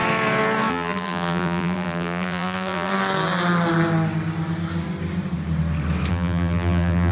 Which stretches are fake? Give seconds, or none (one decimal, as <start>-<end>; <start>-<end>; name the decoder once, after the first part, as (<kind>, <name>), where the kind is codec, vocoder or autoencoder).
0.7-2.9 (vocoder, BigVGAN v2); 6.1-7.1